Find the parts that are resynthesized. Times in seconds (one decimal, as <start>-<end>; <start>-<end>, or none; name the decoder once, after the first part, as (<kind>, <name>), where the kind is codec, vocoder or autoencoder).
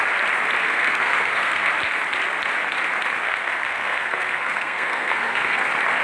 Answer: 0.6-1.7 (codec, SNAC); 3.2-5.6